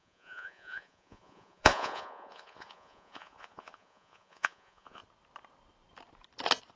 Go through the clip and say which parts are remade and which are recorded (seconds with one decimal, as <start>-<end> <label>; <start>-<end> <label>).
0.0-5.0 remade; 5.0-6.8 recorded